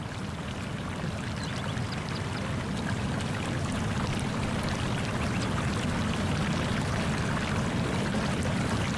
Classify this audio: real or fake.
fake